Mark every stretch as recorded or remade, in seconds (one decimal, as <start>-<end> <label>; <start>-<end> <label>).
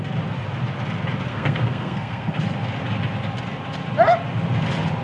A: 0.0-1.3 recorded; 1.3-2.4 remade; 2.4-5.0 recorded